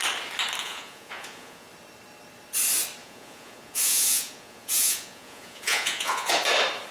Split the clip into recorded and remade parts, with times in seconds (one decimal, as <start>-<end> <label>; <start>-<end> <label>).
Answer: 0.0-0.6 recorded; 0.6-1.7 remade; 1.7-3.0 recorded; 3.0-6.3 remade; 6.3-6.9 recorded